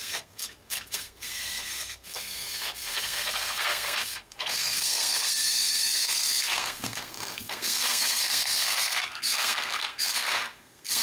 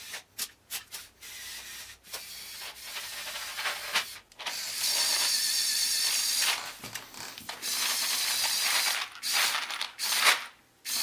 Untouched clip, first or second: second